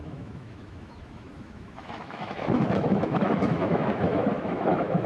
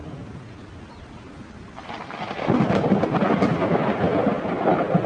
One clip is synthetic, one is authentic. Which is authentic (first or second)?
second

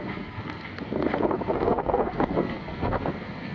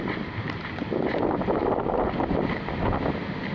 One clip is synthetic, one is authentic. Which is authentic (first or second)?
second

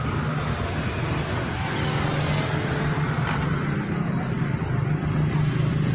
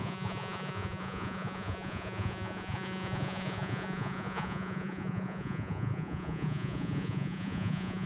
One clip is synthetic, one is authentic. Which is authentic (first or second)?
first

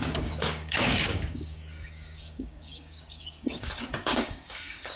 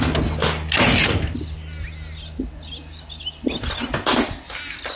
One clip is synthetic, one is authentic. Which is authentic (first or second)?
second